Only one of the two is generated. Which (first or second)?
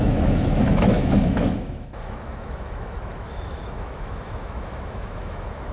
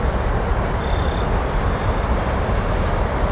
first